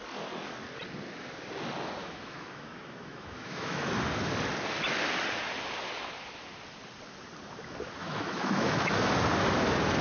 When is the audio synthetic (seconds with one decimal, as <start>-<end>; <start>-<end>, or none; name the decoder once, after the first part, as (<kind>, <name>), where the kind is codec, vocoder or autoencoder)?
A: 2.0-3.9 (autoencoder, DAC-VAE); 8.0-8.9